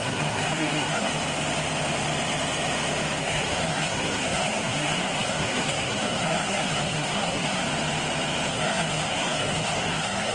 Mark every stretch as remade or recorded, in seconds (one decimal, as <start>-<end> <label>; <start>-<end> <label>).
0.0-1.1 remade; 1.1-3.2 recorded; 3.2-7.6 remade; 7.6-8.5 recorded; 8.5-10.3 remade